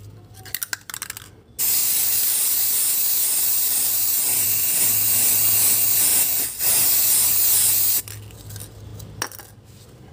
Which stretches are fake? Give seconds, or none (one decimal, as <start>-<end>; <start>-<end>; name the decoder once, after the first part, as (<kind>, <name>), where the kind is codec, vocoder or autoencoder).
1.8-4.8 (vocoder, BigVGAN v2)